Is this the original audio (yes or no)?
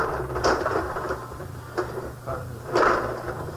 no